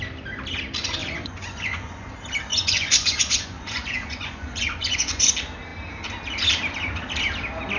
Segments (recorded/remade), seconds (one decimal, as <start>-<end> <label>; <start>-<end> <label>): 0.0-1.0 recorded; 1.0-2.1 remade; 2.1-2.5 recorded; 2.5-5.3 remade; 5.3-7.8 recorded